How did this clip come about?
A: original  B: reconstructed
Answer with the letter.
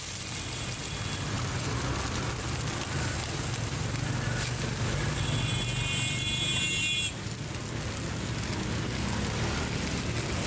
A